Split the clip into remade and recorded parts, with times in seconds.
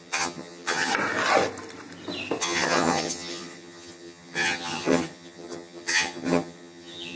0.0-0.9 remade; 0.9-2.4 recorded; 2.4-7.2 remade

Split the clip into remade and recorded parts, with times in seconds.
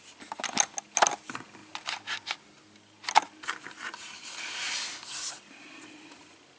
0.0-6.6 recorded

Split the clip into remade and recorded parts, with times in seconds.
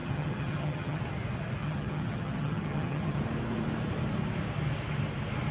0.0-1.0 remade; 1.0-1.6 recorded; 1.6-3.2 remade; 3.2-5.5 recorded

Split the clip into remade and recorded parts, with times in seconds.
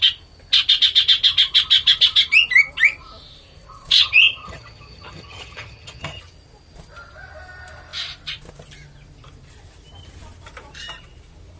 0.0-4.0 recorded; 4.0-6.2 remade; 6.2-11.6 recorded